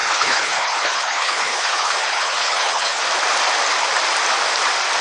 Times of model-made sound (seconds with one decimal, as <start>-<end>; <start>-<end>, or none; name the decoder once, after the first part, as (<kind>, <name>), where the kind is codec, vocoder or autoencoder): 0.0-3.0 (codec, HILCodec)